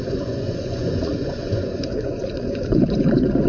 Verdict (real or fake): fake